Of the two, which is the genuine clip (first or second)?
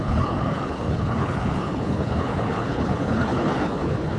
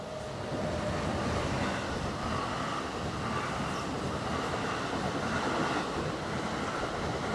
second